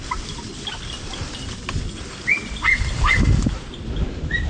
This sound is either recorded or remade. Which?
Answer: recorded